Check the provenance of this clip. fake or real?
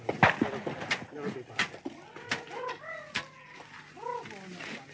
real